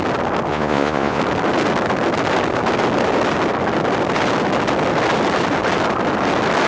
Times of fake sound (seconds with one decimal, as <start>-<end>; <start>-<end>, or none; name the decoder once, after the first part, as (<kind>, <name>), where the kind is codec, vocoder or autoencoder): 0.5-1.2 (vocoder, Vocos)